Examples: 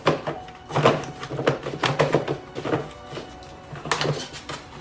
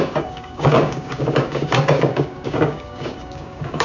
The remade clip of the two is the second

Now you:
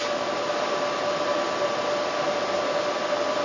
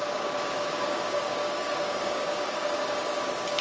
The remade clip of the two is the second